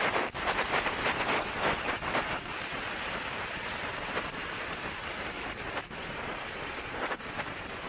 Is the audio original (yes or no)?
no